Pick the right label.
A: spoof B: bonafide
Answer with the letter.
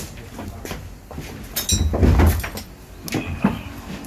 B